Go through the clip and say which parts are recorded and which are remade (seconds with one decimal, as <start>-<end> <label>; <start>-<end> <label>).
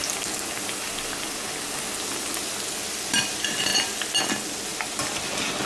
0.0-5.7 recorded